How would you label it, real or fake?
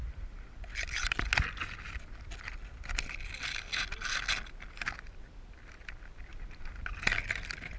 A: real